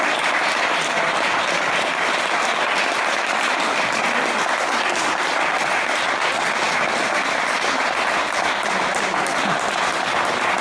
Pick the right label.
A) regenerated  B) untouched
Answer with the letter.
B